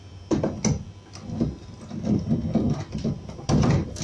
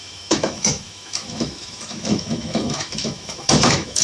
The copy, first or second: second